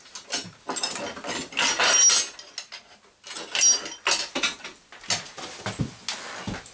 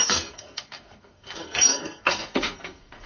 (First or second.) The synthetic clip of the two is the second